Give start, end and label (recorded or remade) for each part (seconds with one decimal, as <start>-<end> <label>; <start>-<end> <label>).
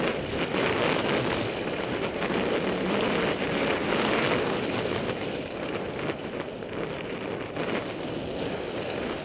0.0-9.2 recorded